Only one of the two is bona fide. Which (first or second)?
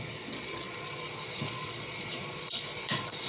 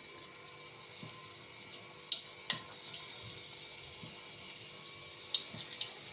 second